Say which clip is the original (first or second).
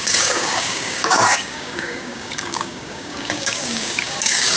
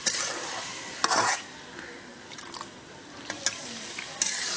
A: second